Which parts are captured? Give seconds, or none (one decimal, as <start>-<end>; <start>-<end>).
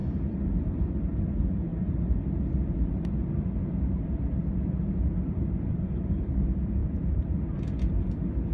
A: 1.7-4.0